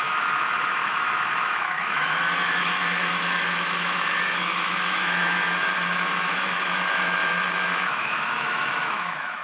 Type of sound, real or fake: fake